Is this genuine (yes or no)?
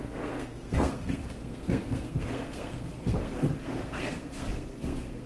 no